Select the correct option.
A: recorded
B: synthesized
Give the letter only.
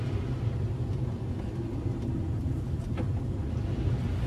A